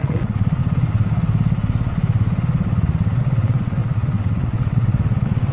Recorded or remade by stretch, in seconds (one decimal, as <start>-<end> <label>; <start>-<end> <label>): 0.0-0.6 remade; 0.6-3.2 recorded; 3.2-5.5 remade